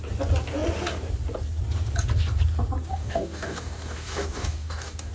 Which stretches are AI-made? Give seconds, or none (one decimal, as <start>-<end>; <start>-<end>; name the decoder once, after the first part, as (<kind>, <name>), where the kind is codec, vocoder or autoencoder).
2.9-5.1 (codec, DAC)